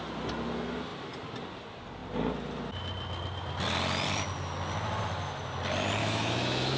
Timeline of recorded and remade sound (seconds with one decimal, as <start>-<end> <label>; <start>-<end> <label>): 0.0-6.0 recorded; 6.0-6.8 remade